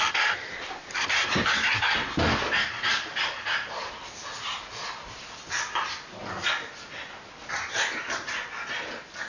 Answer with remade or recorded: recorded